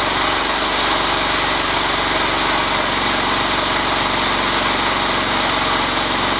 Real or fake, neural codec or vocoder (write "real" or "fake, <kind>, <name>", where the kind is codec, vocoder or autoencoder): real